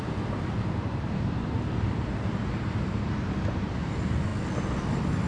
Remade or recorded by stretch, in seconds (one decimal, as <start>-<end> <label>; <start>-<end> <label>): 0.0-4.3 remade; 4.3-5.3 recorded